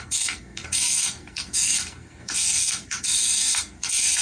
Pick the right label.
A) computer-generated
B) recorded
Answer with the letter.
A